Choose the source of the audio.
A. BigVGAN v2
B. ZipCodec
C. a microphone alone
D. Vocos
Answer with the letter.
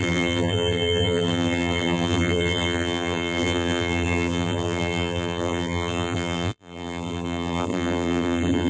A